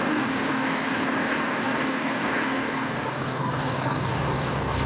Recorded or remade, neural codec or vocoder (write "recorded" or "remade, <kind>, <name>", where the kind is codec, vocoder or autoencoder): remade, codec, DAC